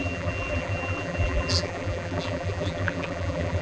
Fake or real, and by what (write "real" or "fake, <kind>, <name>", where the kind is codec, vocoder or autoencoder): fake, vocoder, BigVGAN v2